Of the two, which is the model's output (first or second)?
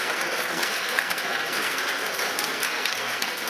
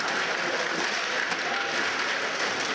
first